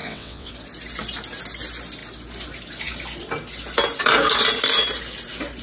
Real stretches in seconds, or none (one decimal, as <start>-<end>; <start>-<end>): 0.5-5.6